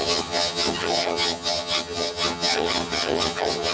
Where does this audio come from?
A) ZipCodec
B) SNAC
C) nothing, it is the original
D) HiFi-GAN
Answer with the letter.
D